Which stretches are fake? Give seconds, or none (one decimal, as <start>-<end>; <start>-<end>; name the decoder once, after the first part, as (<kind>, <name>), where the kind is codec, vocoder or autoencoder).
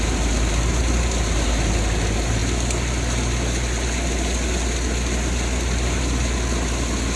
none